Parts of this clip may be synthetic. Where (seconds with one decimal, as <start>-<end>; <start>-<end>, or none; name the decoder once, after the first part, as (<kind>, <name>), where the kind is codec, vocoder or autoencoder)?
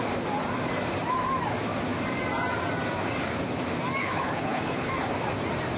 4.0-4.9 (codec, HILCodec)